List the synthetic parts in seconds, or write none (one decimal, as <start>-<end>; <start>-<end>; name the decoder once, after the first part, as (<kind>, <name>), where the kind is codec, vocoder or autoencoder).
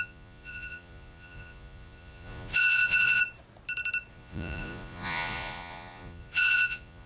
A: 0.0-3.2 (vocoder, Vocos); 4.1-7.1